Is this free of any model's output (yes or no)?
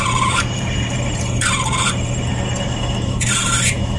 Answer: no